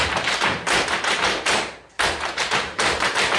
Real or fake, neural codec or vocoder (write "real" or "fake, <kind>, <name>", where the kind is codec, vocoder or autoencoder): fake, vocoder, BigVGAN v2